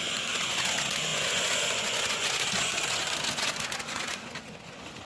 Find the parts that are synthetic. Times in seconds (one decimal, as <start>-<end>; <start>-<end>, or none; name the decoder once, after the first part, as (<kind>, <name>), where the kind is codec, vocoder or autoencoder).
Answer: 0.0-5.0 (vocoder, Vocos)